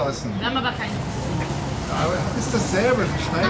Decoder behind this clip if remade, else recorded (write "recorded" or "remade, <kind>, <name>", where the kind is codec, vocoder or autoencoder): recorded